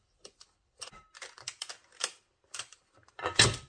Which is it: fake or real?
fake